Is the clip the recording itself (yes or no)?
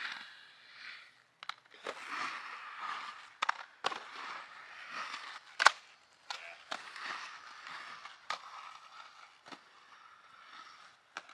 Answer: yes